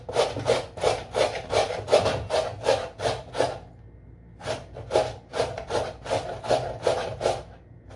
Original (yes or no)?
yes